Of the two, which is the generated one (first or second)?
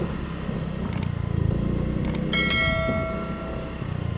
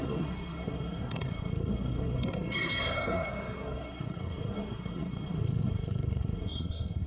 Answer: second